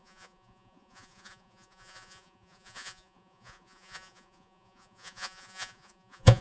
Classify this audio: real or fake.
fake